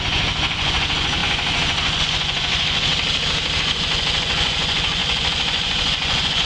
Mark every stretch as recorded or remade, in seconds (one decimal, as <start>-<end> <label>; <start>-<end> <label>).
0.0-2.9 remade; 2.9-3.6 recorded; 3.6-6.5 remade